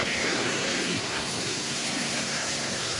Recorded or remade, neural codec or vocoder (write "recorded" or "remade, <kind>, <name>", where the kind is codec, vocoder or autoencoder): remade, codec, SNAC